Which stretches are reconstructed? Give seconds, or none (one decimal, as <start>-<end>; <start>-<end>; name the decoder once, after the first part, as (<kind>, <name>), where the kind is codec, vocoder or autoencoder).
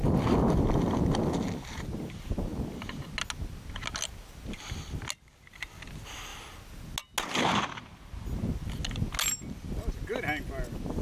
none